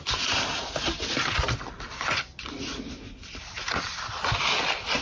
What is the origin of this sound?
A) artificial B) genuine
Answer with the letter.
B